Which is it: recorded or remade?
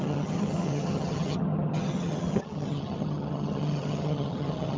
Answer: remade